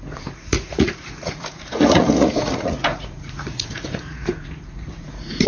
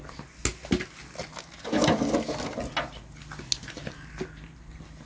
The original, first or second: second